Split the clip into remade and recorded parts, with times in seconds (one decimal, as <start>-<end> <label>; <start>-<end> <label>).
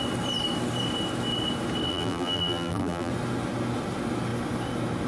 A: 0.0-1.9 recorded; 1.9-3.1 remade; 3.1-5.1 recorded